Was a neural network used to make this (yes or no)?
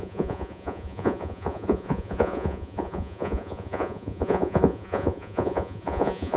yes